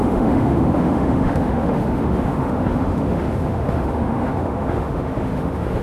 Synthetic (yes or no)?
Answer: yes